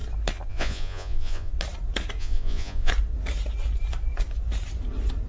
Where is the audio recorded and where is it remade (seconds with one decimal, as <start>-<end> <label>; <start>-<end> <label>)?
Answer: 0.0-0.5 recorded; 0.5-1.5 remade; 1.5-2.2 recorded; 2.2-2.9 remade; 2.9-5.3 recorded